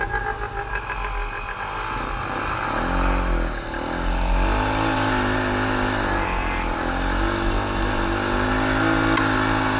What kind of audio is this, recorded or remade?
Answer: recorded